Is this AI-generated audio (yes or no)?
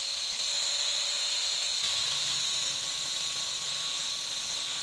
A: yes